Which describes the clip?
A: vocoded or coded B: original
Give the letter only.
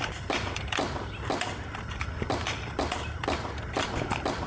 B